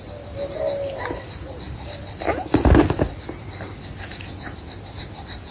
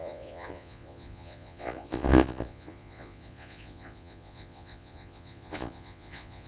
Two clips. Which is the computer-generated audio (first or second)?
second